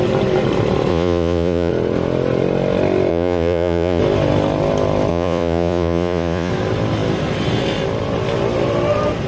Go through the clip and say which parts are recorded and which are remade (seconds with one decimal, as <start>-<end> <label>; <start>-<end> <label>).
0.0-0.9 recorded; 0.9-1.7 remade; 1.7-3.1 recorded; 3.1-4.0 remade; 4.0-5.1 recorded; 5.1-6.5 remade; 6.5-9.3 recorded